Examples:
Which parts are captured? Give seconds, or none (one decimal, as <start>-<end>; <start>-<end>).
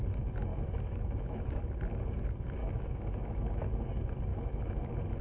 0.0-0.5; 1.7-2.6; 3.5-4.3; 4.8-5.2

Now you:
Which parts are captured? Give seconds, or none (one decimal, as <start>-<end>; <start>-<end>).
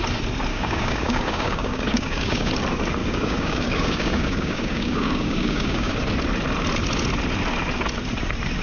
0.0-0.5; 2.5-3.0; 5.9-8.6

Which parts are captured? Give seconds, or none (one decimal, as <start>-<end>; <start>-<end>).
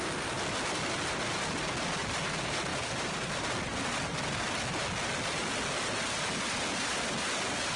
0.0-2.7; 3.4-7.8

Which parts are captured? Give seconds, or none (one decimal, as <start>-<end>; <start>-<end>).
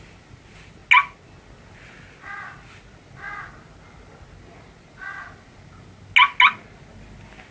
0.0-7.5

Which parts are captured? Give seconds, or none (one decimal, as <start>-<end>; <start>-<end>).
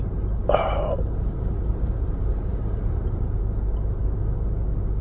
0.0-0.4; 3.4-5.0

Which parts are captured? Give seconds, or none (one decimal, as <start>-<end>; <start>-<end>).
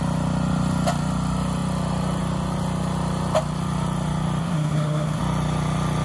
0.0-4.4; 5.2-6.0